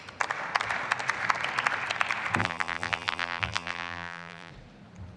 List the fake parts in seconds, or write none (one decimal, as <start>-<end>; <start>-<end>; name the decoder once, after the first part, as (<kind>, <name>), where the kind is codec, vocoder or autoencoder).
2.4-4.5 (vocoder, BigVGAN v2)